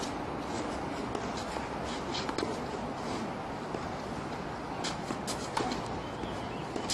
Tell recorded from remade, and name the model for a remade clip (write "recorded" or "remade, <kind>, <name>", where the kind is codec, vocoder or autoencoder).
recorded